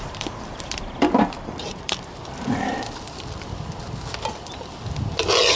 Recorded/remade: remade